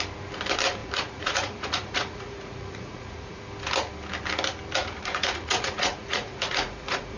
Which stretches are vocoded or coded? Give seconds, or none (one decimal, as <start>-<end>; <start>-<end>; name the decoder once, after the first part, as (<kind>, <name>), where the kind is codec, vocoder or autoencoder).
0.8-3.4 (vocoder, Vocos); 4.8-7.2